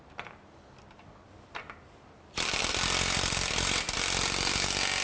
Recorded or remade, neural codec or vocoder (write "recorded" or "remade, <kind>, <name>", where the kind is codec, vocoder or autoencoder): recorded